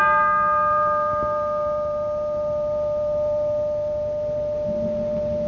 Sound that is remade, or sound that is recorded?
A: recorded